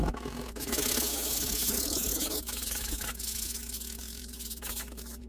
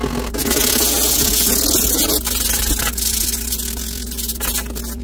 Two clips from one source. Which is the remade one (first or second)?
first